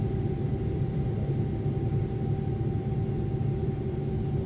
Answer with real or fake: real